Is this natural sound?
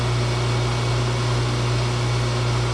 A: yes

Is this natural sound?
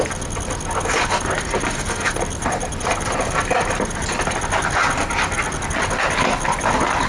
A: yes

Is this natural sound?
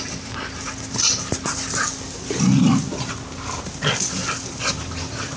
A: yes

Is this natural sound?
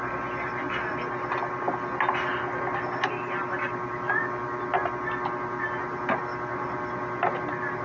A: yes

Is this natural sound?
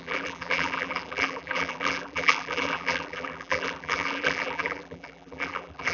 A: no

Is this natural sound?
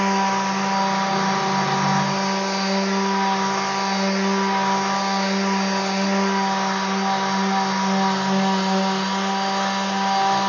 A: yes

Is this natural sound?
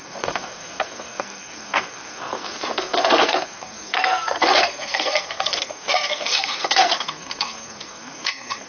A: no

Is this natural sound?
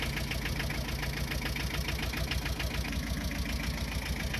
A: yes